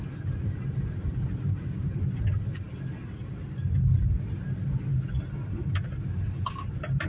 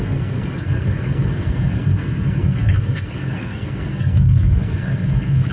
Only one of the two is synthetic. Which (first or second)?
second